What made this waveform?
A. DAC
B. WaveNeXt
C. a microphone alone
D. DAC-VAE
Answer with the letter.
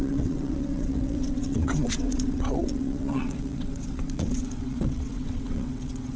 B